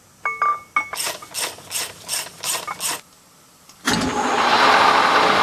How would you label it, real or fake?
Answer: real